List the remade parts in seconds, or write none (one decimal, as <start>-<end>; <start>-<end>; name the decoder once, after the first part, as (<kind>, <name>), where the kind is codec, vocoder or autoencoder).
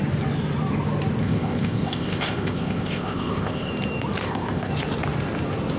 1.2-3.7 (codec, ZipCodec); 4.2-4.7